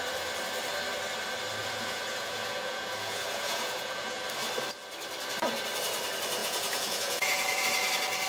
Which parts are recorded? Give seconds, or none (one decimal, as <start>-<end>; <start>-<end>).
0.0-1.6; 4.2-6.4; 7.6-8.3